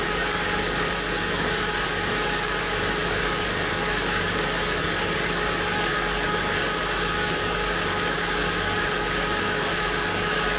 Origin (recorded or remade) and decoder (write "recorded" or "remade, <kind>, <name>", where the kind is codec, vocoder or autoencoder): remade, codec, DAC